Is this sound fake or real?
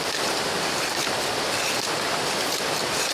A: real